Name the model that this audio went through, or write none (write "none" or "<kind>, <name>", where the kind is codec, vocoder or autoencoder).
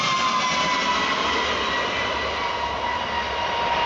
none